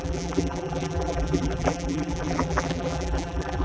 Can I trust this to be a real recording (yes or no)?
no